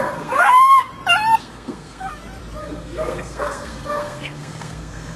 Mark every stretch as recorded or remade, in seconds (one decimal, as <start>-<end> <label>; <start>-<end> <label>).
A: 0.0-0.9 remade; 0.9-1.4 recorded; 1.4-2.1 remade; 2.1-2.6 recorded; 2.6-5.2 remade

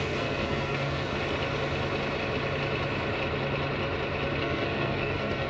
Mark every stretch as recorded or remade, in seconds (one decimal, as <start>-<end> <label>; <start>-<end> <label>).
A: 0.0-1.1 remade; 1.1-4.4 recorded; 4.4-5.5 remade

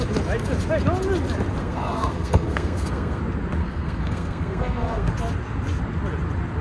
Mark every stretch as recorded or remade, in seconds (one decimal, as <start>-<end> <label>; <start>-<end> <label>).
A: 0.0-1.6 recorded; 1.6-3.2 remade; 3.2-3.6 recorded; 3.6-5.1 remade; 5.1-6.6 recorded

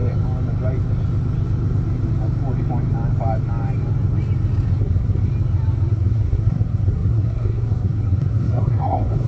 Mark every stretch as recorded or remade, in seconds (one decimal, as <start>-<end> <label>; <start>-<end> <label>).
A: 0.0-4.8 recorded; 4.8-5.3 remade; 5.3-5.9 recorded; 5.9-9.3 remade

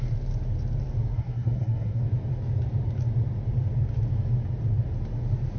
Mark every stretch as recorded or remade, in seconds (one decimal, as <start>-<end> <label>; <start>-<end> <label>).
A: 0.0-1.1 recorded; 1.1-2.0 remade; 2.0-5.6 recorded

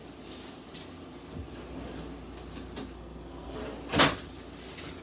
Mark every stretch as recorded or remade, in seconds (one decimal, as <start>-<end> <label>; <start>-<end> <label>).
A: 0.0-3.0 recorded; 3.0-3.6 remade; 3.6-5.0 recorded

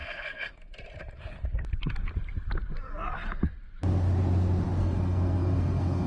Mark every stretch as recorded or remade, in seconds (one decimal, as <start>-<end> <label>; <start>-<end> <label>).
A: 0.0-0.6 remade; 0.6-4.8 recorded; 4.8-6.1 remade